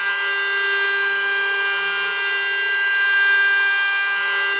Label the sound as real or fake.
real